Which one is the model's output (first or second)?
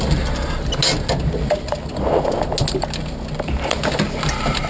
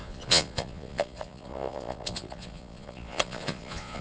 second